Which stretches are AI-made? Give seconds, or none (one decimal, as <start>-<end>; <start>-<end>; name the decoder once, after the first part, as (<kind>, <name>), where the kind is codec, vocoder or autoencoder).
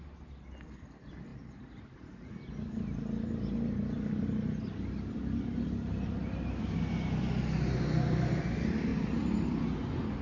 8.9-9.6 (vocoder, BigVGAN v2)